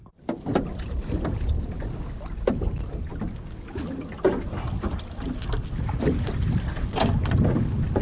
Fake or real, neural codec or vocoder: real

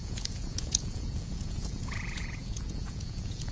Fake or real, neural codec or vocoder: fake, vocoder, Vocos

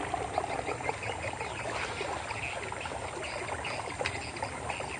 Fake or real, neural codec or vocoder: real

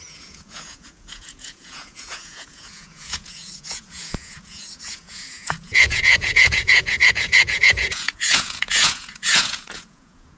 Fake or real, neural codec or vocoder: fake, vocoder, Vocos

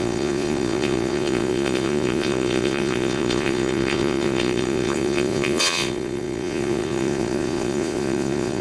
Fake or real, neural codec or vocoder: fake, vocoder, Vocos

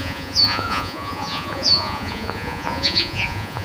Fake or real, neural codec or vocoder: fake, vocoder, Vocos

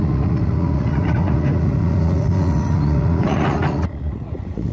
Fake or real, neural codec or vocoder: fake, vocoder, Vocos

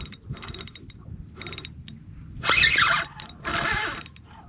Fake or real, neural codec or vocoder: real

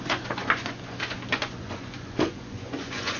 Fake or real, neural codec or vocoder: fake, vocoder, Vocos